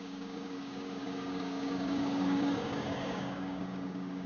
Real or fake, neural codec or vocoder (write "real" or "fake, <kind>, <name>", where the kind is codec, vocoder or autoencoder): fake, codec, DAC